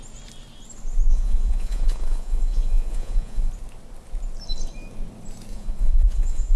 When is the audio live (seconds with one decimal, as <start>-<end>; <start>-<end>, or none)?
0.0-1.1; 3.5-5.5